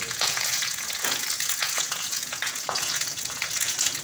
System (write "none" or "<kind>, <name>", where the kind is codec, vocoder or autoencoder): vocoder, Vocos